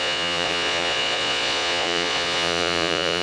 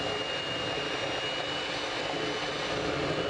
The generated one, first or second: first